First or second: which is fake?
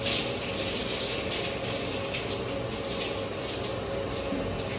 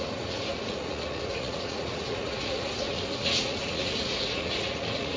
second